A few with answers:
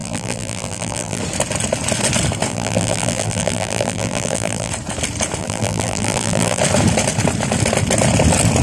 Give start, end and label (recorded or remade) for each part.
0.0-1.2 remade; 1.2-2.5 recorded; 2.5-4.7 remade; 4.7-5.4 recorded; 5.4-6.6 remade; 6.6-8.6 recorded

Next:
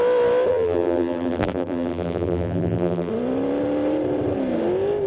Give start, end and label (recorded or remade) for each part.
0.0-0.5 recorded; 0.5-3.1 remade; 3.1-5.1 recorded

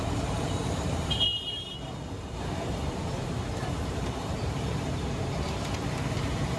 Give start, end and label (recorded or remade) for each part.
0.0-6.6 remade

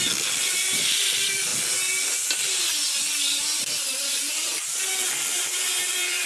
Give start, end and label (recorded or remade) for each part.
0.0-1.5 remade; 1.5-3.4 recorded; 3.4-4.5 remade; 4.5-5.1 recorded; 5.1-6.3 remade